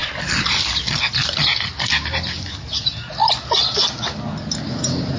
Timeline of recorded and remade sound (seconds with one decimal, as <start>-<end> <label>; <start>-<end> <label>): 0.0-5.2 recorded